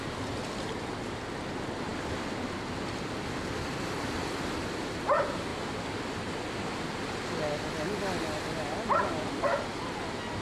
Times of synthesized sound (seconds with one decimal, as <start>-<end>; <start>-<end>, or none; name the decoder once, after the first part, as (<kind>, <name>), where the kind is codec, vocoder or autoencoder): none